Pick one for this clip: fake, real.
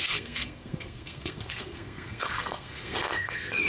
fake